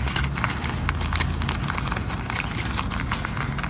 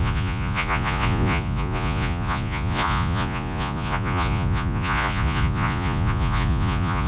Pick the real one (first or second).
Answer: first